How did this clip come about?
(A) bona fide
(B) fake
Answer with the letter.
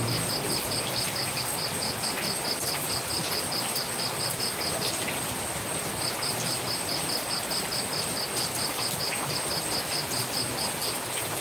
A